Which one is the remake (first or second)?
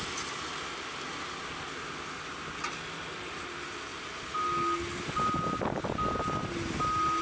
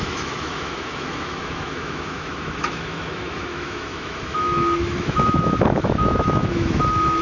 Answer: second